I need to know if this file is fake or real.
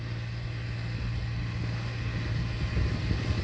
real